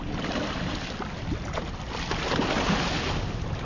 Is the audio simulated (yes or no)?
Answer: no